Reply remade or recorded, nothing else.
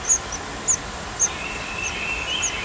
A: recorded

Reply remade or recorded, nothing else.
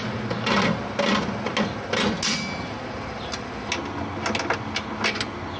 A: recorded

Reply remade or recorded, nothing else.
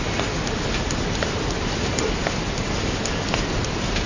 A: recorded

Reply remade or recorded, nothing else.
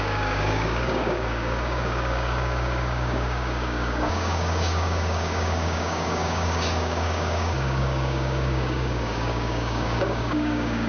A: remade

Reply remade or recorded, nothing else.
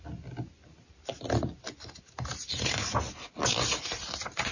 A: recorded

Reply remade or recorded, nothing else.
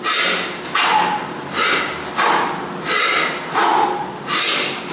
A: recorded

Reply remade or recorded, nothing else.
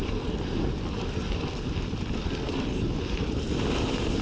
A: recorded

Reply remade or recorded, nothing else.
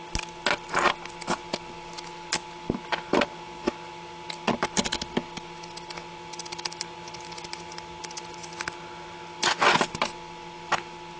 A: recorded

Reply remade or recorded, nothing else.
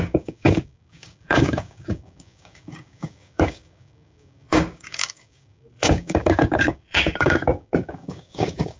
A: remade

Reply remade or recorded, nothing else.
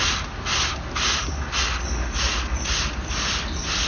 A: recorded